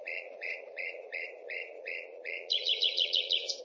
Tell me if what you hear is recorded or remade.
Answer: remade